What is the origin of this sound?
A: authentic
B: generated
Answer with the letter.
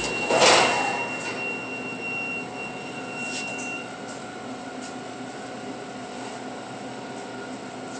A